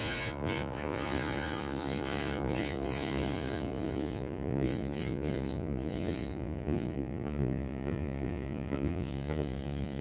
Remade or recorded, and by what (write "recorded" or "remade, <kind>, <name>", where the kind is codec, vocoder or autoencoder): remade, vocoder, Vocos